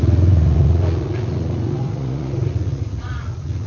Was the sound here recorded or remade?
remade